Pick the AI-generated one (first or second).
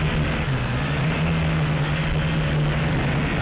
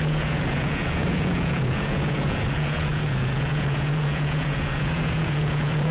second